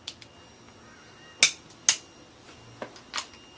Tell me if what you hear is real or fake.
real